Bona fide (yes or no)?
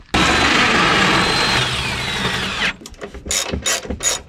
yes